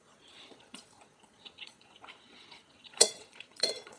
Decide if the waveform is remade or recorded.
remade